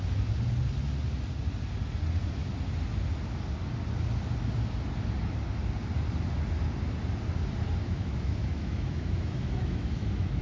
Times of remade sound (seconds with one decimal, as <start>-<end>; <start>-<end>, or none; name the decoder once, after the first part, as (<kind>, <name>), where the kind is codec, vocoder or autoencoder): 7.8-10.4 (autoencoder, DAC-VAE)